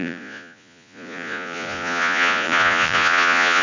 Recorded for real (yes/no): no